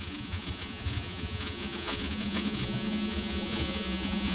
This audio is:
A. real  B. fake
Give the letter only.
B